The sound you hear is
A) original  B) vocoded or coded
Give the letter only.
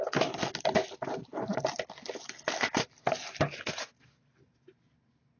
A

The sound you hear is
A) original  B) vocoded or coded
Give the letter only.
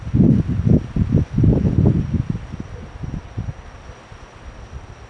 A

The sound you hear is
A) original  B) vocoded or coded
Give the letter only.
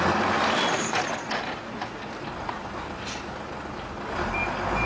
A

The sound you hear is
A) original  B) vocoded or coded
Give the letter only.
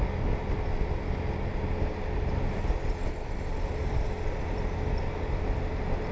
A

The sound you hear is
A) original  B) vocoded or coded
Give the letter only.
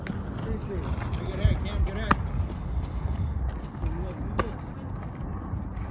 A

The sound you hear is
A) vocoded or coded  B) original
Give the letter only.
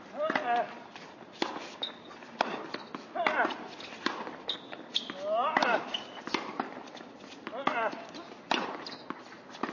B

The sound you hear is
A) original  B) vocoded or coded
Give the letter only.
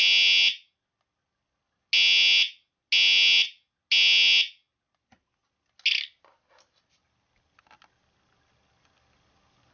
A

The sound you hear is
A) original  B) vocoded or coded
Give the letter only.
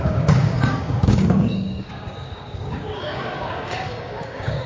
B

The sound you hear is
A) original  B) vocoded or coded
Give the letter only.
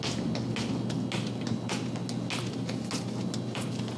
A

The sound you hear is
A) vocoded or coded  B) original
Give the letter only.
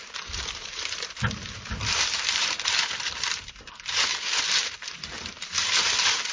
A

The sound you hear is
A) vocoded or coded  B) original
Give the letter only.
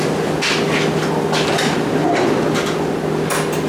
B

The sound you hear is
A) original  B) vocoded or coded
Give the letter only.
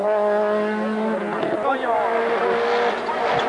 A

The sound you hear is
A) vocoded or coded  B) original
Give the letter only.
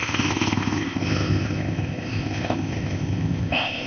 A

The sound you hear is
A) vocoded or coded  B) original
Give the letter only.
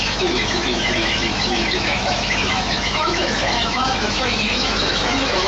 A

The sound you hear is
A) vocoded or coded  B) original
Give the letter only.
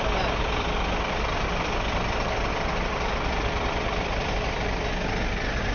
B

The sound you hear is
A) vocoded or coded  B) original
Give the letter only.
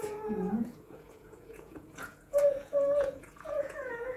A